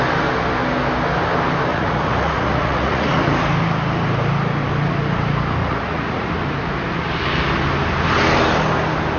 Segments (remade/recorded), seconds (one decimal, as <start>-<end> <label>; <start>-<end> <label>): 0.0-1.7 recorded; 1.7-3.2 remade; 3.2-5.6 recorded; 5.6-6.3 remade; 6.3-9.2 recorded